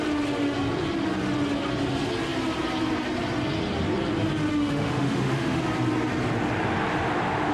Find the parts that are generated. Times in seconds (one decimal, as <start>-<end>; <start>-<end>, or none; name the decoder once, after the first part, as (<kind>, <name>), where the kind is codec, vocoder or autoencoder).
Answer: 4.5-5.6 (autoencoder, DAC-VAE)